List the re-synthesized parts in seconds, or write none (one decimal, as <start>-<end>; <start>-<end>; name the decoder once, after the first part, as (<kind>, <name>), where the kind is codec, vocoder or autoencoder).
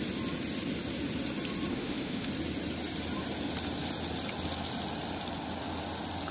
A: 1.7-2.3 (autoencoder, DAC-VAE)